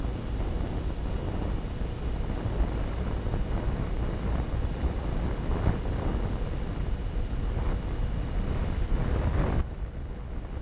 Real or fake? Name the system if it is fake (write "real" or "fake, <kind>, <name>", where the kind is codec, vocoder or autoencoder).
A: real